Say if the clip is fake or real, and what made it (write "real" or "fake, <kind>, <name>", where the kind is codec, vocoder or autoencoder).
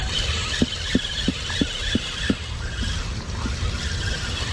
real